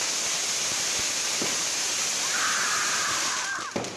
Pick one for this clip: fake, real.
real